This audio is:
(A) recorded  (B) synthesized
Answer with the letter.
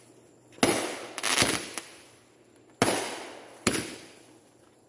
A